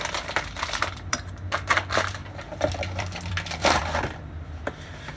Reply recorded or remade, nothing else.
remade